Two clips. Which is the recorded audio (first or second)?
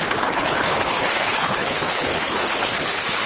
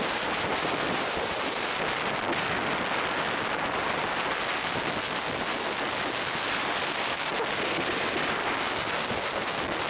second